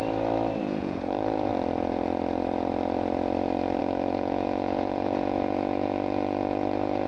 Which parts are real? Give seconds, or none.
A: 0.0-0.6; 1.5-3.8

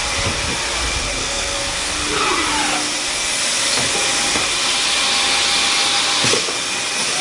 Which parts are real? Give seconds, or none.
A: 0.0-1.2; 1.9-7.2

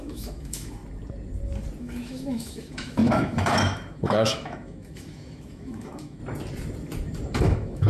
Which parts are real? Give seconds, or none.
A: 0.8-1.8; 6.2-7.4

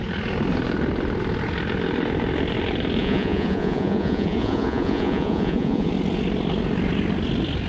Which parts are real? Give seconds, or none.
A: 0.0-3.0; 5.9-7.7